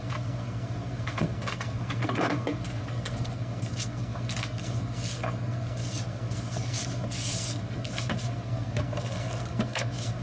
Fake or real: fake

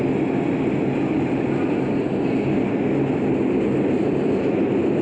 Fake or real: real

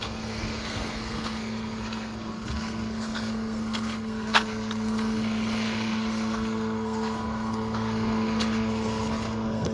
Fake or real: fake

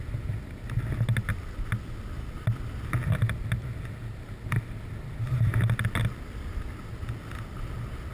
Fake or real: real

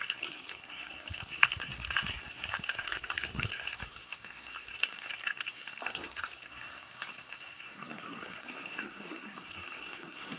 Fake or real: fake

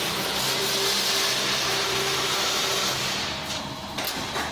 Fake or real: real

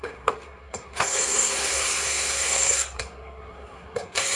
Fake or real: fake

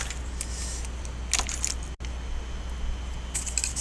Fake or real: real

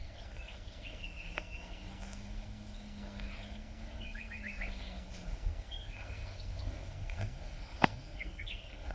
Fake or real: fake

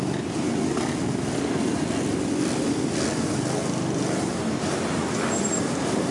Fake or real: real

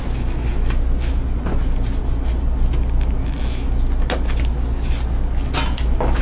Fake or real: real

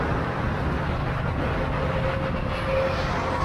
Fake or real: real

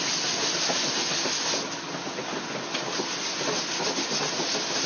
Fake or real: real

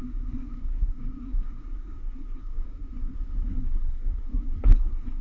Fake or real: fake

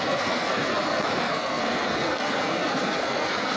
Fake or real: fake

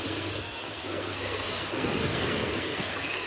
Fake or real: fake